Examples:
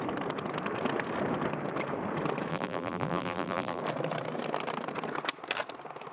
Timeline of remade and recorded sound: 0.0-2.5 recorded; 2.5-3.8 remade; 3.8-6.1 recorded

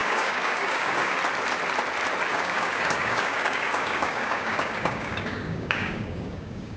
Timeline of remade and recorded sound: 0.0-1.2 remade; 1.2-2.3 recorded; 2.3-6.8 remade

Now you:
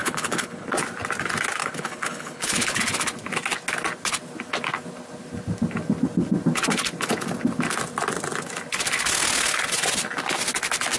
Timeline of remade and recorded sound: 0.0-0.7 remade; 0.7-1.6 recorded; 1.6-2.8 remade; 2.8-11.0 recorded

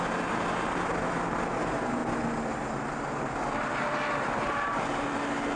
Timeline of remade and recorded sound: 0.0-5.6 recorded

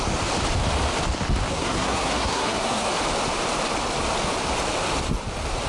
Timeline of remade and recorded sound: 0.0-1.5 recorded; 1.5-2.9 remade; 2.9-5.7 recorded

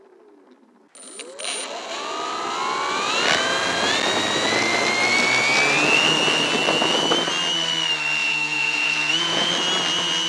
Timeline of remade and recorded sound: 0.0-8.2 recorded; 8.2-9.5 remade; 9.5-10.3 recorded

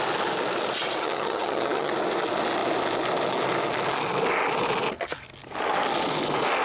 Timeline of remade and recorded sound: 0.0-1.0 recorded; 1.0-1.9 remade; 1.9-6.6 recorded